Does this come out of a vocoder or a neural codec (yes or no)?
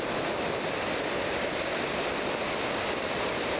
no